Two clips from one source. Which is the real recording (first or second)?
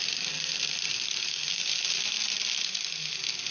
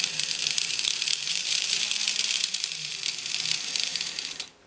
first